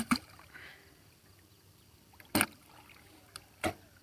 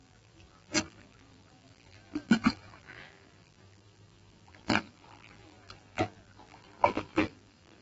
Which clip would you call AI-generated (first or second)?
second